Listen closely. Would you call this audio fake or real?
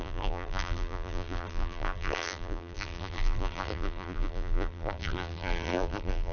fake